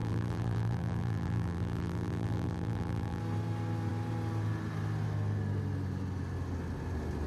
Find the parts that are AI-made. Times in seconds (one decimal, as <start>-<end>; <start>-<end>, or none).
0.0-3.2